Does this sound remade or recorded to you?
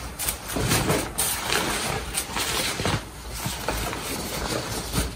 recorded